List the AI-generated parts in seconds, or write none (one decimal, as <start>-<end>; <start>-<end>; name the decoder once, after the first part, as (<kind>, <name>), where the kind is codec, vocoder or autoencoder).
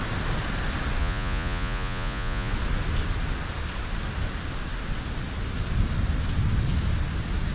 1.0-2.5 (vocoder, Vocos)